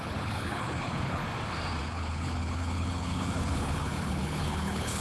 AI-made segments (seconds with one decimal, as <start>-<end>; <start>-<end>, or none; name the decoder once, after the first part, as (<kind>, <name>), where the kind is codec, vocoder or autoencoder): 0.0-1.2 (codec, HILCodec); 1.8-5.0